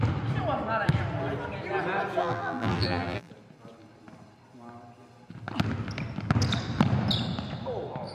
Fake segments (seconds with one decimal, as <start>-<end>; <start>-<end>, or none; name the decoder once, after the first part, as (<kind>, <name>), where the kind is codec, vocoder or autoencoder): 2.2-3.3 (vocoder, BigVGAN v2)